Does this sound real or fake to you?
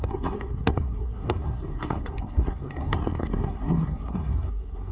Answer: fake